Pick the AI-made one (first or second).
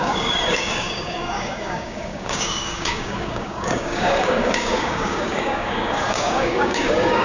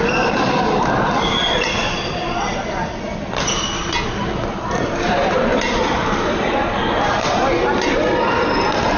first